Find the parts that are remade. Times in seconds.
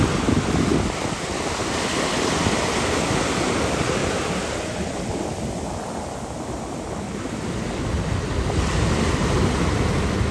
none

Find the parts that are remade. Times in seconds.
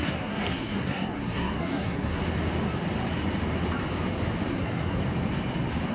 0.0-2.2 (codec, SNAC); 4.5-5.0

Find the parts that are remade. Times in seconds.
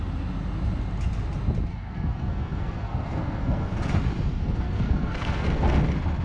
1.7-4.0 (codec, SNAC); 4.4-5.8